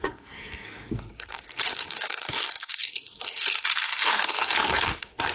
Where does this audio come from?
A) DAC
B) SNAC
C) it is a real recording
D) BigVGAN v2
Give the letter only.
B